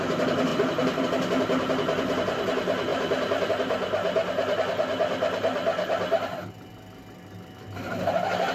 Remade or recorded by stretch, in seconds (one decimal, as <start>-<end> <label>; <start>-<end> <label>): 0.0-0.5 recorded; 0.5-1.0 remade; 1.0-2.9 recorded; 2.9-3.5 remade; 3.5-8.5 recorded

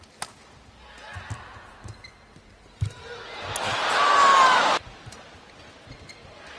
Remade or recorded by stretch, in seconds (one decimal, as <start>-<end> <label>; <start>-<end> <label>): 0.0-6.6 recorded